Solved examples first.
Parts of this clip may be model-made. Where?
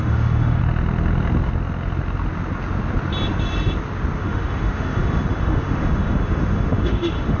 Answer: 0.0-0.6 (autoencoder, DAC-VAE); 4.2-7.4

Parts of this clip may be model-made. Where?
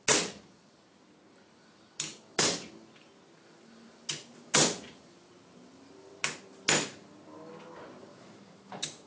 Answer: 8.1-9.1 (autoencoder, DAC-VAE)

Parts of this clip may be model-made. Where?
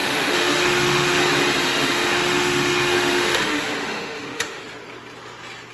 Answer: 0.0-1.2 (autoencoder, DAC-VAE); 1.6-4.6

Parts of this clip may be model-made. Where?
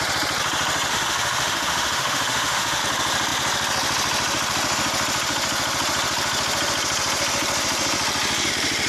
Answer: 0.9-2.8 (autoencoder, DAC-VAE)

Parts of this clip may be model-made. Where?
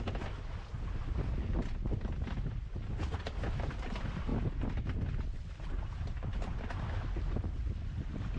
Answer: none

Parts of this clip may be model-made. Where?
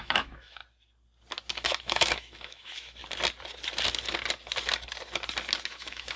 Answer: 0.0-0.6 (autoencoder, DAC-VAE); 1.8-3.0; 5.7-6.2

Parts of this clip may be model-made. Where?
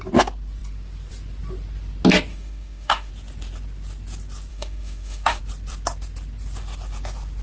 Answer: 2.3-3.1 (autoencoder, DAC-VAE); 4.5-5.4